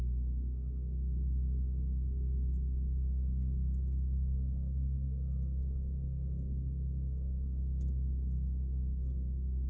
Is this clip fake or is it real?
fake